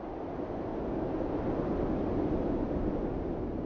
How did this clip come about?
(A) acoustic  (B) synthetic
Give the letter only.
A